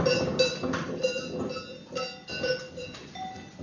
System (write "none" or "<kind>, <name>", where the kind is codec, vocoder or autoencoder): none